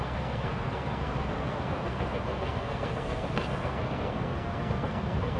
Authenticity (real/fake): fake